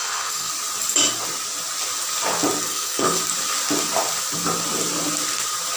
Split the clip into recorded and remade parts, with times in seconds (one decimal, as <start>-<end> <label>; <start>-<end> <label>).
0.0-0.5 remade; 0.5-2.7 recorded; 2.7-3.2 remade; 3.2-5.8 recorded